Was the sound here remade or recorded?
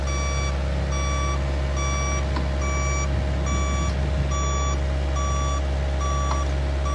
recorded